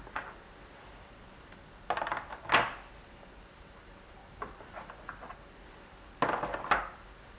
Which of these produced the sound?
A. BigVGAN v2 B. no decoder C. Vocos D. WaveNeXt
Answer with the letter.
B